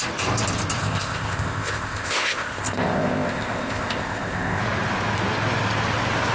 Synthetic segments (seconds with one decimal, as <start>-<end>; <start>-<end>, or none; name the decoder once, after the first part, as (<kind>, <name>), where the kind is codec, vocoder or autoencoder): 0.8-4.6 (codec, ZipCodec)

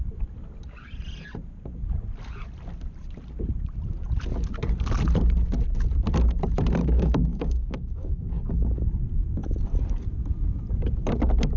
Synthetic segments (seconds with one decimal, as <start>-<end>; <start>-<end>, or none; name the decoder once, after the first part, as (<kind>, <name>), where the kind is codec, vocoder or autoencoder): 6.8-8.8 (codec, DAC)

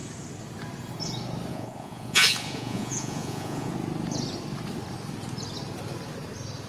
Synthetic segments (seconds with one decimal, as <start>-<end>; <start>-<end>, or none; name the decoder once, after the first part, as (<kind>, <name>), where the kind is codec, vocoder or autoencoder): 1.5-3.7 (vocoder, Vocos)

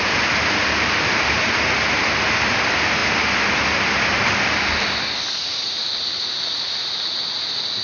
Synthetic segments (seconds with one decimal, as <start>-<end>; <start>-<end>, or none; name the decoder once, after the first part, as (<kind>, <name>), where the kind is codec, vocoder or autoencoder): none

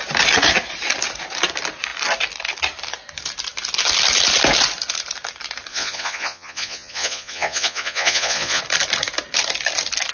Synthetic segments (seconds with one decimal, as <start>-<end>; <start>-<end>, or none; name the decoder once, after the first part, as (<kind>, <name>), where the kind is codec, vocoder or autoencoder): 5.7-8.6 (vocoder, Vocos)

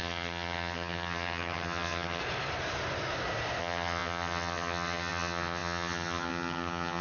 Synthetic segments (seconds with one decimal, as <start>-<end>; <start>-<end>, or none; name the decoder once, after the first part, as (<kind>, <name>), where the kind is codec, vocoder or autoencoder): 0.0-2.2 (vocoder, HiFi-GAN); 3.6-7.0

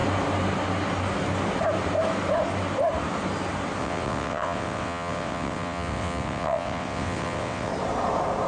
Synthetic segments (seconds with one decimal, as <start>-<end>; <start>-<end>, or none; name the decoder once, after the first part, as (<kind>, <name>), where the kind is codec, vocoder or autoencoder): 3.8-7.7 (vocoder, WaveNeXt)

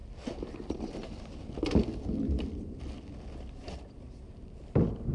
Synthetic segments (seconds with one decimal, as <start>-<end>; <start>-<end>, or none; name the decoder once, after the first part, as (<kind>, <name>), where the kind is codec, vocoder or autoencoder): none